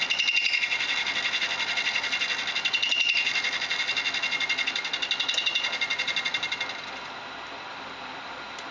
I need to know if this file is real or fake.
real